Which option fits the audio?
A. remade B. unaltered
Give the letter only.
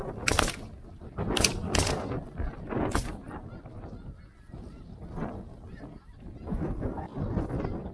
B